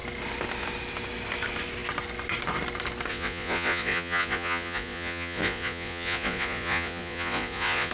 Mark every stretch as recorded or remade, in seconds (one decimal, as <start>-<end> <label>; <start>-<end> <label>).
0.0-3.1 recorded; 3.1-7.9 remade